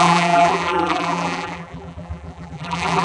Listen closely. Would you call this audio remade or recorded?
remade